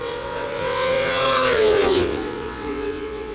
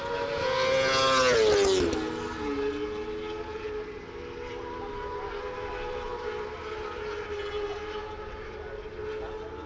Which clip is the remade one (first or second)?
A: first